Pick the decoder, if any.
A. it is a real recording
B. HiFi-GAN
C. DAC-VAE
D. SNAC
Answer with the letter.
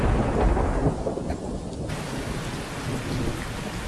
A